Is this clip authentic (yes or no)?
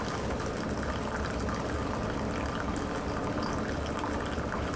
yes